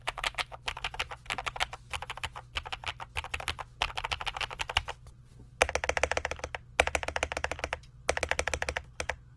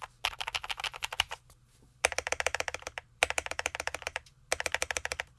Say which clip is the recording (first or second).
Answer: first